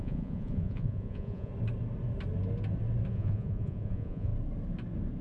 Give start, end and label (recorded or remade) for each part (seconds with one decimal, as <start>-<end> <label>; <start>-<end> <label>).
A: 0.0-1.5 remade; 1.5-3.1 recorded; 3.1-4.3 remade; 4.3-5.2 recorded